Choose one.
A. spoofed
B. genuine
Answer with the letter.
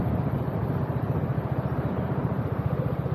A